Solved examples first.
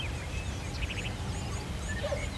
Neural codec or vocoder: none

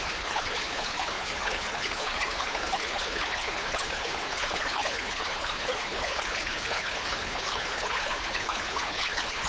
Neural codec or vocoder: codec, HILCodec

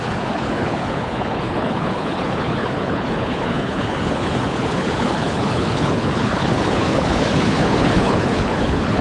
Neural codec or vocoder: codec, HILCodec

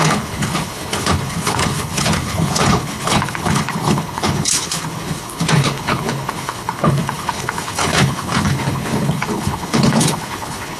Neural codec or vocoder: codec, HILCodec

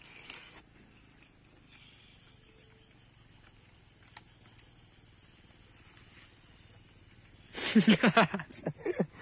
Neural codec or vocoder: none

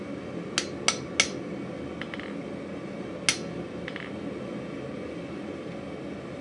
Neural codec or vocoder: none